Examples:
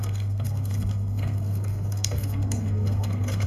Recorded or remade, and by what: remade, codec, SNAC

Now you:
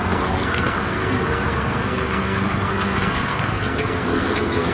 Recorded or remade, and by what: remade, codec, SNAC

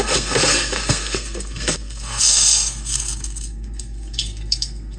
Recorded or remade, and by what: remade, codec, SNAC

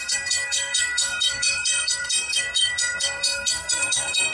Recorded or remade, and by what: remade, codec, SNAC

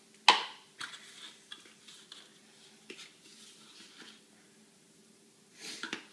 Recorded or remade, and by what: recorded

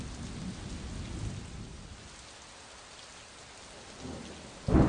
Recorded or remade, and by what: recorded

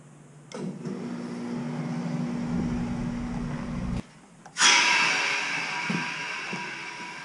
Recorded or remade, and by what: recorded